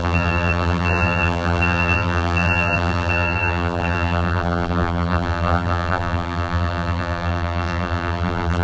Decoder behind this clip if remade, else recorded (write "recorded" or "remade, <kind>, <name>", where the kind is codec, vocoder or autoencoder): remade, vocoder, BigVGAN v2